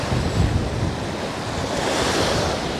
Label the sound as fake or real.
real